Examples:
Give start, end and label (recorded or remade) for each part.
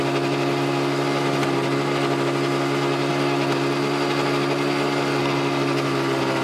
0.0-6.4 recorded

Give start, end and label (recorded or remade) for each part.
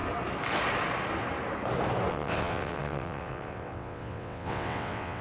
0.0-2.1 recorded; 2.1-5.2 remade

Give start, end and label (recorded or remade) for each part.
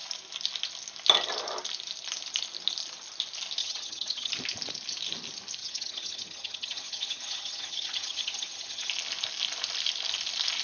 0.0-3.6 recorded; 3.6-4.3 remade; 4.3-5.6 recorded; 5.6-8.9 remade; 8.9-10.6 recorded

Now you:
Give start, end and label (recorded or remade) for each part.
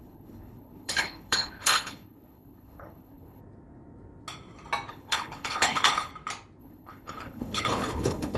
0.0-3.4 remade; 3.4-4.9 recorded; 4.9-6.1 remade; 6.1-6.6 recorded; 6.6-8.4 remade